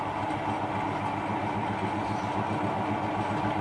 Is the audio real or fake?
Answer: real